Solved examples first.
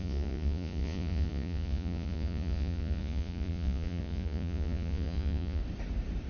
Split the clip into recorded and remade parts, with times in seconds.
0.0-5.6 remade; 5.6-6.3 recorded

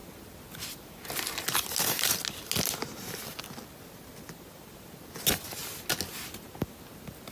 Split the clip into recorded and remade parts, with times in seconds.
0.0-7.3 recorded

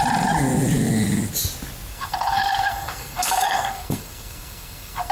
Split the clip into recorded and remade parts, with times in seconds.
0.0-1.9 recorded; 1.9-5.1 remade

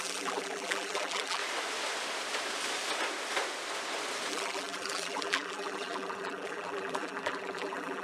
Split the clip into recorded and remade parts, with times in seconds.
0.0-1.4 remade; 1.4-4.3 recorded; 4.3-8.0 remade

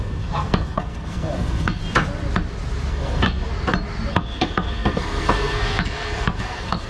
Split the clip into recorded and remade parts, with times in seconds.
0.0-1.8 remade; 1.8-2.9 recorded; 2.9-3.5 remade; 3.5-4.1 recorded; 4.1-6.9 remade